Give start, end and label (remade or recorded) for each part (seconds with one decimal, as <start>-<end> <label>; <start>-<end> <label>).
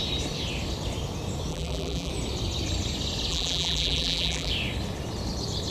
0.0-1.5 recorded; 1.5-2.1 remade; 2.1-3.3 recorded; 3.3-4.5 remade; 4.5-5.7 recorded